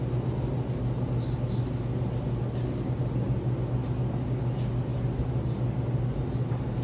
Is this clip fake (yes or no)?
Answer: no